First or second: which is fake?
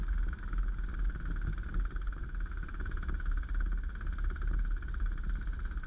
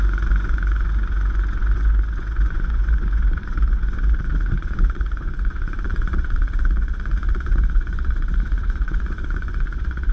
second